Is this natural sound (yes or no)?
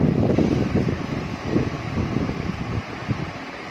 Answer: yes